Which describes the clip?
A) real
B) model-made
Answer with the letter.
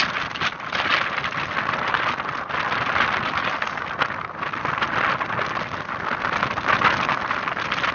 A